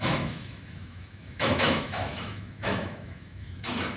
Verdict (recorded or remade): remade